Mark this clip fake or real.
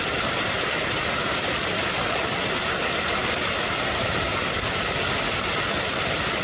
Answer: fake